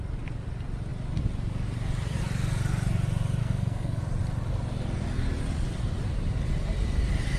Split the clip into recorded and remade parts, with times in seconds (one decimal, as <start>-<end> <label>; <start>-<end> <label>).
0.0-3.4 recorded; 3.4-4.0 remade; 4.0-7.4 recorded